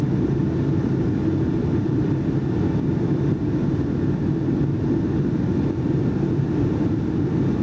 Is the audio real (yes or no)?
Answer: yes